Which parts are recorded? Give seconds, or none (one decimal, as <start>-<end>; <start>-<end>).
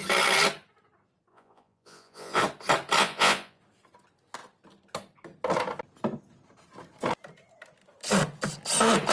0.0-1.3; 2.4-3.0; 3.6-9.1